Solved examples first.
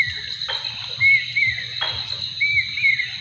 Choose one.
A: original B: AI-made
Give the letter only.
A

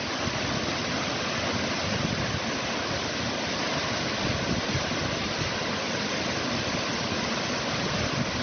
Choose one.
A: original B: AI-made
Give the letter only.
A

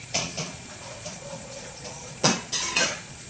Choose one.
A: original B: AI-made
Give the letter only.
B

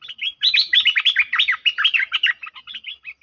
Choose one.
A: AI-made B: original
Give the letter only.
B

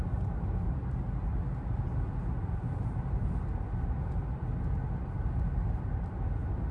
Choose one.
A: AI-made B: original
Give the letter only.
B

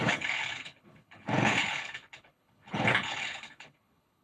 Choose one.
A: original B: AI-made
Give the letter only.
B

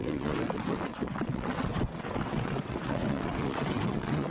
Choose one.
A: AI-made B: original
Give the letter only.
A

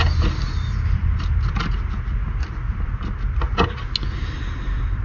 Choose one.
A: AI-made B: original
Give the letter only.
B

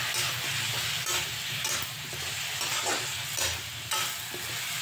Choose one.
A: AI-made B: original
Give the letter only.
B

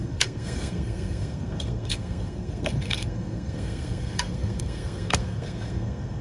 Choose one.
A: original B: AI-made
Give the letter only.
B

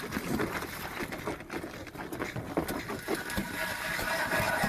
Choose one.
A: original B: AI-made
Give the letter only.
A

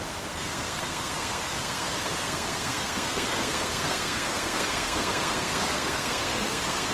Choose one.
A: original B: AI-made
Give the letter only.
B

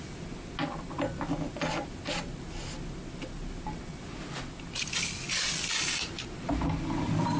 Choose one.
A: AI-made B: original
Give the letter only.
B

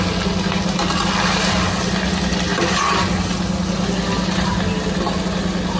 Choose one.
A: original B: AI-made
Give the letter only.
A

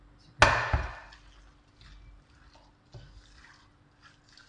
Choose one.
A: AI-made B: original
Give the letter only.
B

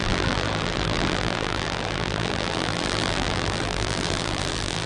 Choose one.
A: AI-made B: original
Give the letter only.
A